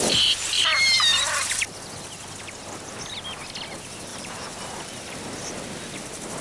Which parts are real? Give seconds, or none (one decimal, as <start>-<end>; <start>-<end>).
0.0-4.1; 5.5-6.4